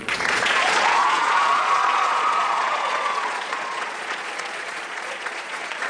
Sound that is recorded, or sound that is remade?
remade